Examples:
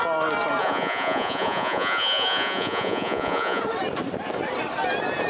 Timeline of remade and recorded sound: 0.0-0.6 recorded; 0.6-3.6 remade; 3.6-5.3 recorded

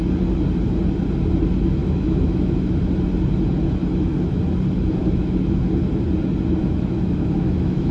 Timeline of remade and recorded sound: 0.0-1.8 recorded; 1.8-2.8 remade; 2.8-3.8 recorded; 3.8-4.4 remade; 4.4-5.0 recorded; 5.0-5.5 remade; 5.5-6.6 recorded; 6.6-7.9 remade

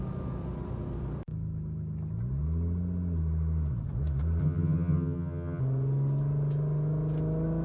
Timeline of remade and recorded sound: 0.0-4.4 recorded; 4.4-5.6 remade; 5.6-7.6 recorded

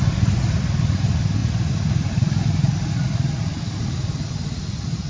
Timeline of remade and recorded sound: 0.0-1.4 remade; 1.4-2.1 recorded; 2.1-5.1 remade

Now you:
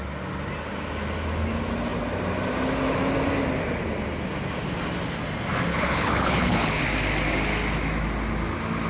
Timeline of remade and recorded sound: 0.0-5.7 recorded; 5.7-6.8 remade; 6.8-8.9 recorded